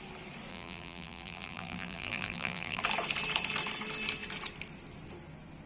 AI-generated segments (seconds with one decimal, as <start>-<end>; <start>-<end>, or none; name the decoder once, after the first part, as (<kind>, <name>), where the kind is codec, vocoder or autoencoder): 0.5-2.8 (vocoder, BigVGAN v2)